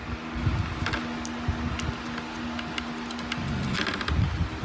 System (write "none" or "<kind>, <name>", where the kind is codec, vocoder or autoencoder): none